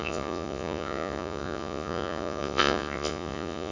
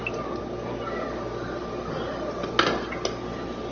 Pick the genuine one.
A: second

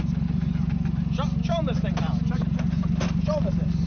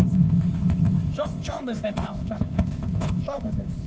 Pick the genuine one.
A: first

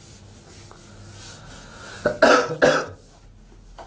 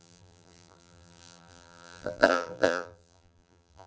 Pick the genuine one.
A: first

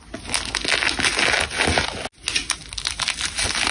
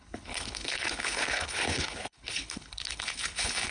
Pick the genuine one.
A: first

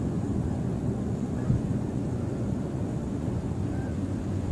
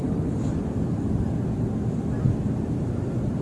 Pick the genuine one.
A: second